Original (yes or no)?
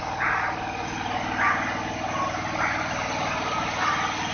yes